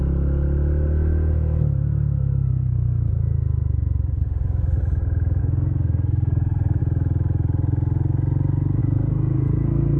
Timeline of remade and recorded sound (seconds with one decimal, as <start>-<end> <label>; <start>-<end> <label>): 0.0-2.5 recorded; 2.5-3.1 remade; 3.1-5.4 recorded; 5.4-6.8 remade; 6.8-8.8 recorded; 8.8-10.0 remade